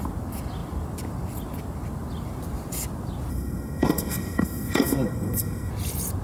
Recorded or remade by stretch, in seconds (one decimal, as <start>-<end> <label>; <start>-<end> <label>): 0.0-3.3 recorded; 3.3-5.7 remade; 5.7-6.2 recorded